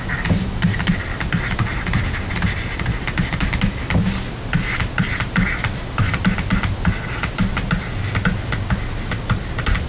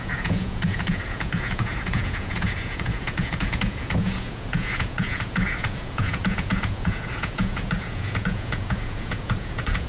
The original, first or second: first